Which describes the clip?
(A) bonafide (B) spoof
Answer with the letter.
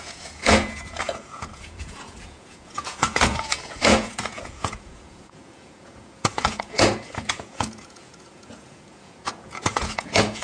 B